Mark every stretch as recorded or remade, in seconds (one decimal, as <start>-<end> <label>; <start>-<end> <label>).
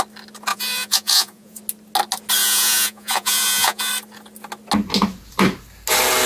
0.0-0.5 recorded; 0.5-1.6 remade; 1.6-2.4 recorded; 2.4-3.9 remade; 3.9-6.3 recorded